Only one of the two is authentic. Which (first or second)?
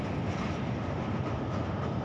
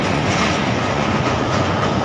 first